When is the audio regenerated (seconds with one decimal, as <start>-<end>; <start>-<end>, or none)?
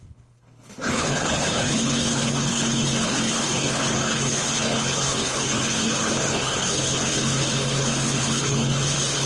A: 0.0-9.3